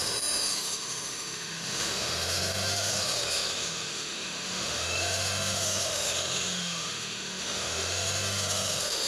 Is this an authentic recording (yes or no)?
no